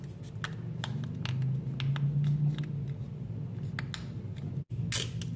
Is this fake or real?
real